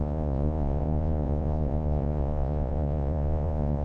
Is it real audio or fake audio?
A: fake